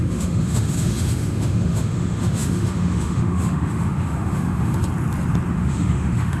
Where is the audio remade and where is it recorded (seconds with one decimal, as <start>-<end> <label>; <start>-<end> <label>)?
0.0-4.8 remade; 4.8-5.5 recorded; 5.5-6.4 remade